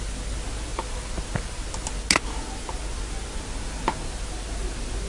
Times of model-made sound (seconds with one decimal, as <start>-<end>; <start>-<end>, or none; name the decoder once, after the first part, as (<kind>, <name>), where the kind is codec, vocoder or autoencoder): none